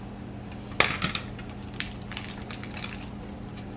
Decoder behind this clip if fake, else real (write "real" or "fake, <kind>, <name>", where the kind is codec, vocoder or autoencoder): real